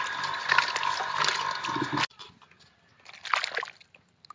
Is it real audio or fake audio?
real